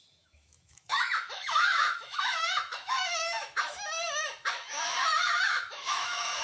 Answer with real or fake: fake